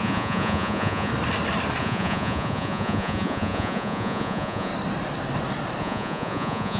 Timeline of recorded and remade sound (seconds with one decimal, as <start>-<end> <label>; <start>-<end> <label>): 0.0-1.1 remade; 1.1-1.8 recorded; 1.8-4.7 remade; 4.7-5.8 recorded; 5.8-6.8 remade